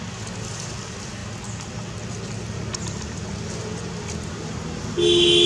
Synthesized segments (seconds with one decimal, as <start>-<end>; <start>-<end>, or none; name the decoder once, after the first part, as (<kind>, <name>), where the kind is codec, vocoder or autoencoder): none